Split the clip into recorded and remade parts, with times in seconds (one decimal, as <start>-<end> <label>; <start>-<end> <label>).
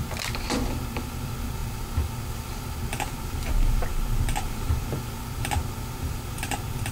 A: 0.0-6.9 remade